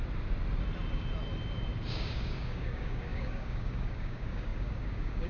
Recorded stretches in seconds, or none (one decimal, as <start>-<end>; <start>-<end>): 0.0-1.9